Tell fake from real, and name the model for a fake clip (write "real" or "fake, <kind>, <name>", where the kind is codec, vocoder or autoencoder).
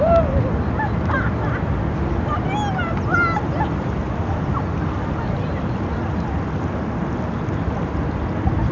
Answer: real